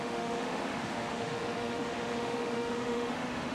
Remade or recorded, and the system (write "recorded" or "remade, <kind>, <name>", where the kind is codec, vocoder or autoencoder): remade, autoencoder, DAC-VAE